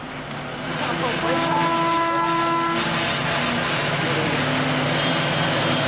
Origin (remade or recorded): recorded